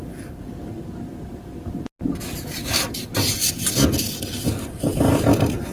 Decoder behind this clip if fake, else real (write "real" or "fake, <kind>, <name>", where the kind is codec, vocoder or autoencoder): real